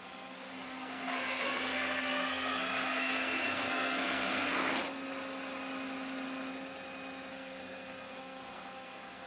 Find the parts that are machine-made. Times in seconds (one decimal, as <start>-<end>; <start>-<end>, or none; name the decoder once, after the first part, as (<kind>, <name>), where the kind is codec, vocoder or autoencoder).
0.0-4.7 (codec, SNAC); 7.3-9.3